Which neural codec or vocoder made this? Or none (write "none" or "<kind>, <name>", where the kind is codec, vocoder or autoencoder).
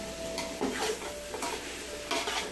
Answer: none